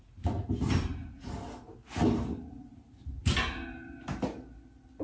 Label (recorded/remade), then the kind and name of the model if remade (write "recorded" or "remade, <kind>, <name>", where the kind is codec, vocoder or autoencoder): recorded